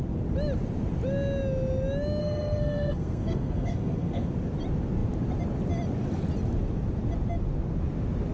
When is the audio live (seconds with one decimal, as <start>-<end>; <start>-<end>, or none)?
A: 0.0-2.2; 4.3-8.3